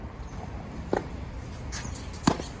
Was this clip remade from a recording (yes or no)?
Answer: no